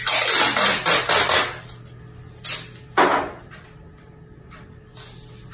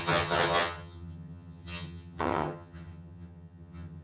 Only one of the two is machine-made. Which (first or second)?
second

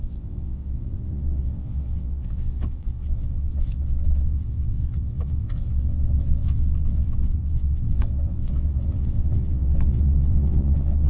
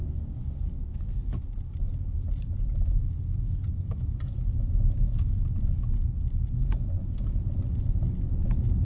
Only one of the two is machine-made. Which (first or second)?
first